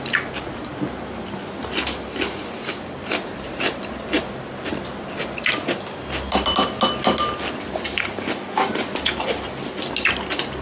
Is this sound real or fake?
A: real